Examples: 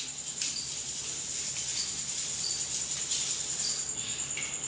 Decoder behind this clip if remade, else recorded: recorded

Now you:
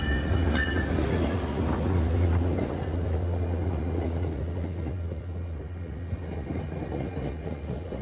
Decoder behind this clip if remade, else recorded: remade, vocoder, Vocos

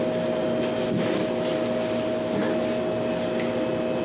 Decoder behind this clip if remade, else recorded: recorded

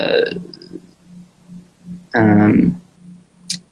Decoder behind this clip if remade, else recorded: recorded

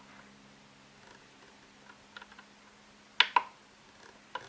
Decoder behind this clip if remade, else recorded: recorded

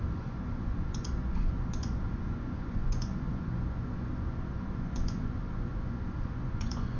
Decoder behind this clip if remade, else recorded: remade, vocoder, Vocos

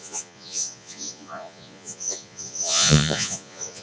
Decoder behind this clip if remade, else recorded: remade, vocoder, Vocos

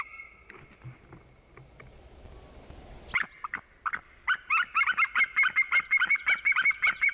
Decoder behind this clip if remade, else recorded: recorded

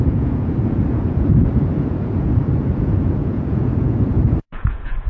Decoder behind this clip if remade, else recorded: remade, vocoder, Vocos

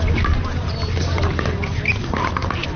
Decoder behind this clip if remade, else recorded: recorded